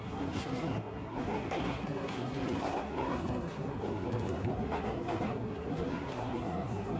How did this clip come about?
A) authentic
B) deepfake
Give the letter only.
B